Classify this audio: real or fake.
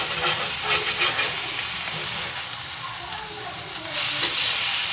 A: real